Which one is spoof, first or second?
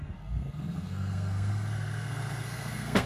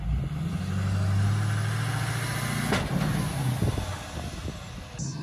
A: first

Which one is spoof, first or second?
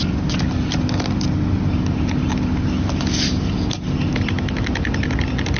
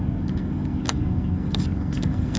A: second